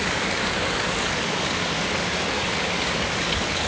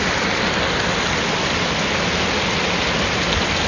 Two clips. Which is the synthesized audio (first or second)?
first